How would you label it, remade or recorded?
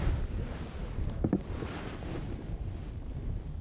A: remade